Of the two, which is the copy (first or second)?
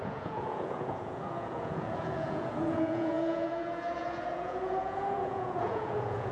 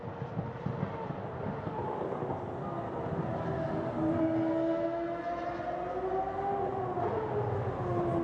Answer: first